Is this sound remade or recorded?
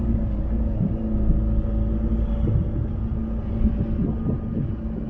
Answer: recorded